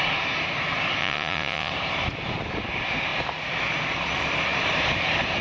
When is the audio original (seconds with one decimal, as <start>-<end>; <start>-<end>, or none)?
0.0-1.0; 1.7-5.4